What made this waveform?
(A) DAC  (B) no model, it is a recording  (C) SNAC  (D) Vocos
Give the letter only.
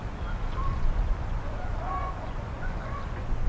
D